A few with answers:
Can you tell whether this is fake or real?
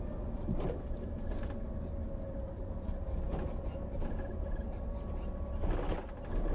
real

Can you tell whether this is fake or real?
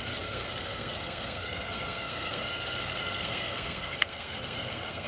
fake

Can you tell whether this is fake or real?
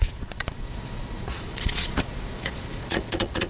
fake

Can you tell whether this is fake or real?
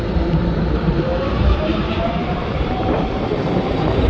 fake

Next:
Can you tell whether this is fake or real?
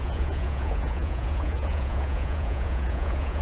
fake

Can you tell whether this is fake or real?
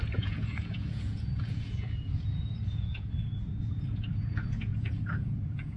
fake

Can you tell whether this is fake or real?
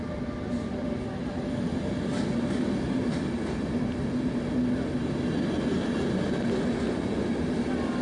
real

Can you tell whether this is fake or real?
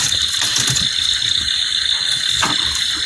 real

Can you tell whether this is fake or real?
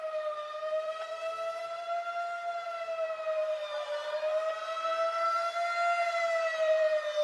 fake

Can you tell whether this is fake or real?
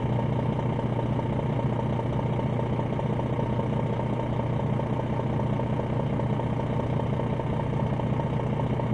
real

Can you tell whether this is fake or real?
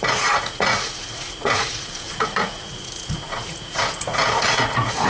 fake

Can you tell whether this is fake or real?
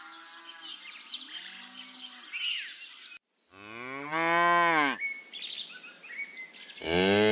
real